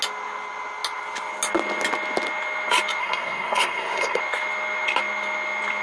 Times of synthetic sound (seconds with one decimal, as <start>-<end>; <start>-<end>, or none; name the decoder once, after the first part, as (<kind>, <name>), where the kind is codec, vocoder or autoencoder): 3.0-4.2 (codec, SNAC)